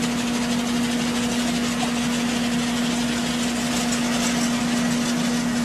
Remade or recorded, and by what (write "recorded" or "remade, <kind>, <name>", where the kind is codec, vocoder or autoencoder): recorded